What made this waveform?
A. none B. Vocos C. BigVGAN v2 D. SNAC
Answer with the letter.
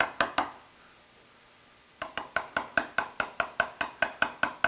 A